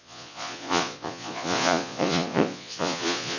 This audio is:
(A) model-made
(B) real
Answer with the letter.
A